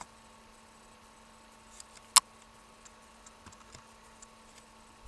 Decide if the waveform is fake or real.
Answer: real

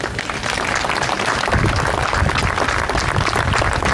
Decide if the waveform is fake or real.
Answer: real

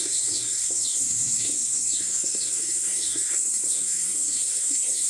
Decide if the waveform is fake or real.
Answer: fake